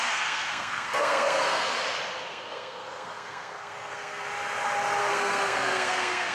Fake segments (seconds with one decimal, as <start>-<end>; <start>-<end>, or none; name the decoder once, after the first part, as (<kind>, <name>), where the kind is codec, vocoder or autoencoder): 0.0-1.7 (codec, SNAC); 2.3-4.3; 5.0-6.3